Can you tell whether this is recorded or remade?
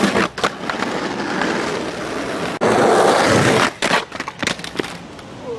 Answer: recorded